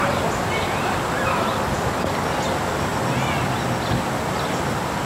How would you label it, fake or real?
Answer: real